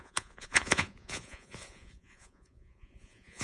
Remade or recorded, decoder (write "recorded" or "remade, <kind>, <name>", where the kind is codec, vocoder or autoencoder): remade, vocoder, Vocos